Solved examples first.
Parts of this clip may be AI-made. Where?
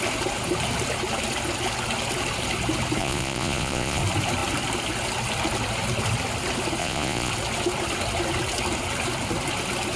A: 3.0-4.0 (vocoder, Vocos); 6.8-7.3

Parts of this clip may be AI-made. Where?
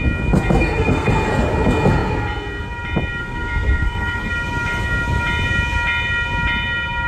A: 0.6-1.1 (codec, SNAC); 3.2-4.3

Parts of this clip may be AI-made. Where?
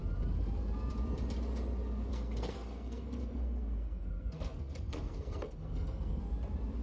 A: 2.1-6.2 (codec, SNAC)